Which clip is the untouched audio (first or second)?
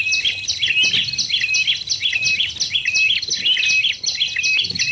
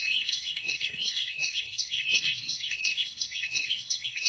first